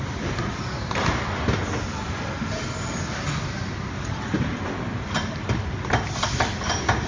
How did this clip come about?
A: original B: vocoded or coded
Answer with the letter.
A